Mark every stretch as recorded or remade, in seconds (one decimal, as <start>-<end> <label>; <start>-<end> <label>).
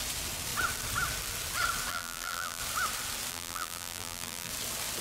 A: 0.0-1.9 recorded; 1.9-2.6 remade; 2.6-3.3 recorded; 3.3-4.5 remade; 4.5-5.0 recorded